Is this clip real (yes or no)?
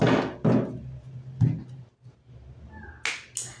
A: yes